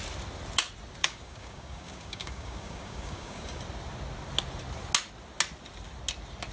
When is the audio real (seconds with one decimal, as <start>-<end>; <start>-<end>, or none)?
0.0-1.0; 3.6-6.5